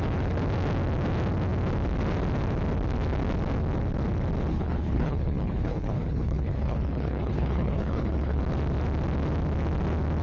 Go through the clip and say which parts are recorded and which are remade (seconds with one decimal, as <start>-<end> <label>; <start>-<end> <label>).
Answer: 0.0-4.5 recorded; 4.5-8.4 remade; 8.4-10.2 recorded